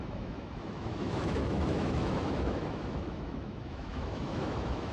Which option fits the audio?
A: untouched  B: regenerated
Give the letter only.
B